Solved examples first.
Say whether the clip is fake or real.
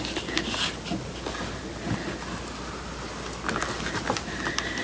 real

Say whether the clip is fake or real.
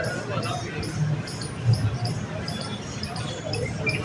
real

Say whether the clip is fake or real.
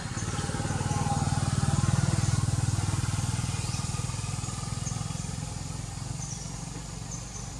real